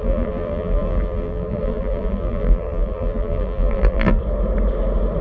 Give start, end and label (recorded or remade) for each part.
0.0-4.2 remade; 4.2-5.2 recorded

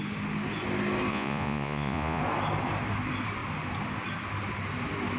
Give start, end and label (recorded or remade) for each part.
0.0-1.1 recorded; 1.1-2.2 remade; 2.2-5.2 recorded